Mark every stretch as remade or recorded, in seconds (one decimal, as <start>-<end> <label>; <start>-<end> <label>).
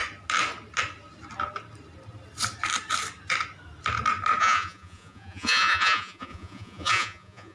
0.0-4.4 recorded; 4.4-7.5 remade